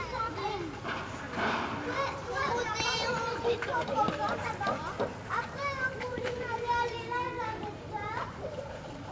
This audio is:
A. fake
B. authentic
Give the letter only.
A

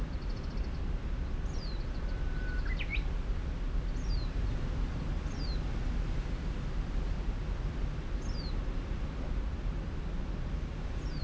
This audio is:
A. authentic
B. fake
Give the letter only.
A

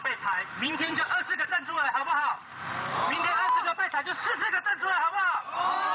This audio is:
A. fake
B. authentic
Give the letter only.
A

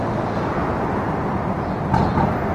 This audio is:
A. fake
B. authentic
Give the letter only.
B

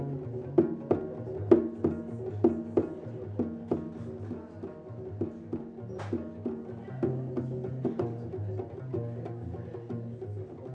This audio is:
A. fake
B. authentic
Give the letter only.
B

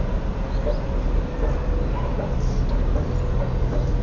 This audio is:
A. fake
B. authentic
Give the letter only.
B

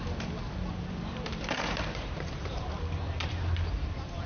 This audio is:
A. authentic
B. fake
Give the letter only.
B